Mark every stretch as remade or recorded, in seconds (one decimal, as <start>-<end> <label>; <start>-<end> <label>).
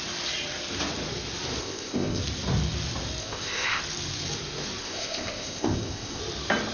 0.0-1.6 recorded; 1.6-2.2 remade; 2.2-3.2 recorded; 3.2-3.8 remade; 3.8-4.8 recorded; 4.8-6.2 remade; 6.2-6.7 recorded